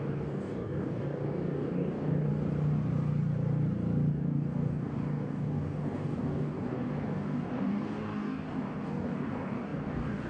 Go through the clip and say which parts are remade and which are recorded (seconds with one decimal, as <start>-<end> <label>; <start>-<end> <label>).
0.0-2.3 remade; 2.3-4.1 recorded; 4.1-10.3 remade